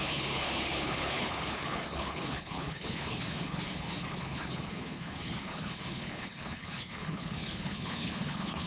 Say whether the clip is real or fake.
fake